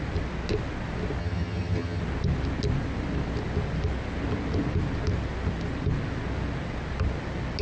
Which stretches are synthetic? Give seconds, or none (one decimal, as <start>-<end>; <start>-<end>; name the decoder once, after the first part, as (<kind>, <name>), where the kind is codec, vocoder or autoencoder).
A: 1.2-2.0 (vocoder, HiFi-GAN)